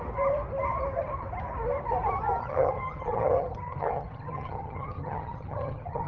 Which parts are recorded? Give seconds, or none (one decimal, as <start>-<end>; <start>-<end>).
0.0-2.4